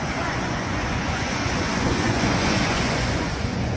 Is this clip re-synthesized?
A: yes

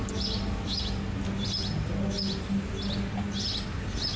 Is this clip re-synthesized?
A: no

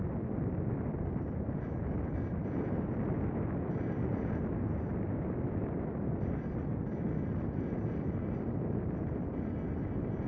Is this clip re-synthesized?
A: no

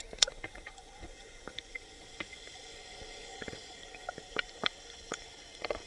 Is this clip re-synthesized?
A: yes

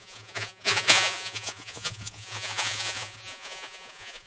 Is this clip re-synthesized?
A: yes